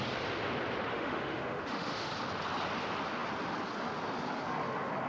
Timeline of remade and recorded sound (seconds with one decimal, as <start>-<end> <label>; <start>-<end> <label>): 0.0-0.9 recorded; 0.9-2.1 remade; 2.1-5.1 recorded